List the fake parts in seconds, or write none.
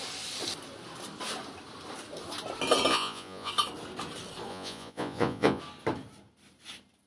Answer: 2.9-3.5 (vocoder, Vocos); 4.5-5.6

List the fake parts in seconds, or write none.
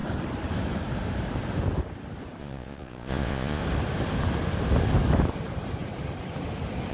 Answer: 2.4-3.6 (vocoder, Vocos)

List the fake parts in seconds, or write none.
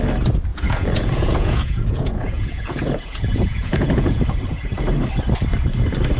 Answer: 0.5-4.2 (vocoder, Vocos)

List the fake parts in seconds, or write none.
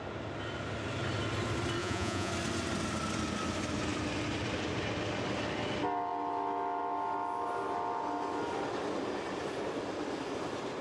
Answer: 1.8-2.3 (vocoder, Vocos)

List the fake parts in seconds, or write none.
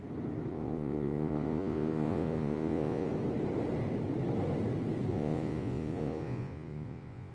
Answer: 0.5-3.1 (vocoder, Vocos); 5.1-7.3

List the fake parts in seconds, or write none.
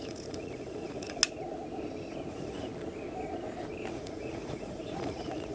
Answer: 0.0-1.2 (vocoder, Vocos); 2.3-2.7; 3.9-5.5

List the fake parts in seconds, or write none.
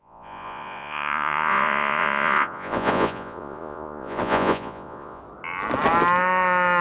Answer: 0.0-5.2 (vocoder, Vocos)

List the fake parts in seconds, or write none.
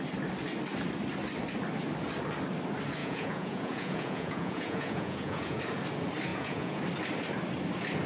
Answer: 3.0-5.6 (vocoder, Vocos); 6.3-6.8